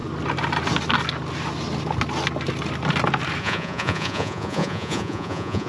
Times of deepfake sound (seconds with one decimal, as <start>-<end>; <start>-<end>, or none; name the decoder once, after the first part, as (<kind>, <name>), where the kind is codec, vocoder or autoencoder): 3.4-5.7 (vocoder, Vocos)